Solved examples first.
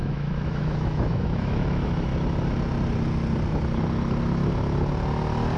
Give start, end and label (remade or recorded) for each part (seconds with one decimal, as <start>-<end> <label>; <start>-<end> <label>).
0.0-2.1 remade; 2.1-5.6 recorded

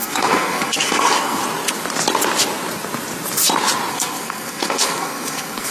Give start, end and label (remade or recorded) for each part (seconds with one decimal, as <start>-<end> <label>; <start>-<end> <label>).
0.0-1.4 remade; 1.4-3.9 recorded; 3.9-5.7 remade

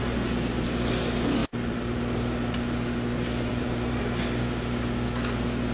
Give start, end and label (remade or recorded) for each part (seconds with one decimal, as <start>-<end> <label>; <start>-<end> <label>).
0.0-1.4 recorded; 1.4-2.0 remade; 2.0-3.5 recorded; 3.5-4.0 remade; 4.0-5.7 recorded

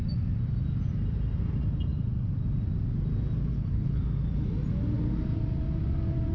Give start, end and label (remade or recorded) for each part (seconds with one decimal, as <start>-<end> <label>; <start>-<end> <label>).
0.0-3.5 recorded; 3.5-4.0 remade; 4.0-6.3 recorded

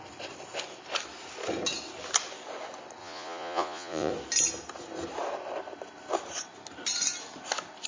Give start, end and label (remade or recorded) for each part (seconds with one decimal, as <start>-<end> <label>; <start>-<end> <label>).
0.0-3.0 recorded; 3.0-4.1 remade; 4.1-7.9 recorded